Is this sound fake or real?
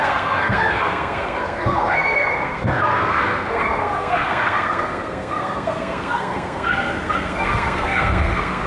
fake